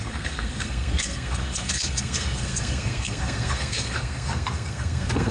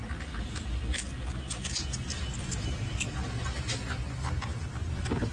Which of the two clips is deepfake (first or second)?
first